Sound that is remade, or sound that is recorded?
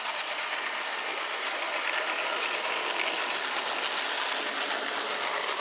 recorded